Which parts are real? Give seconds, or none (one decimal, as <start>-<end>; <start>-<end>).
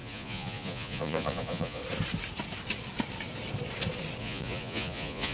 1.8-4.2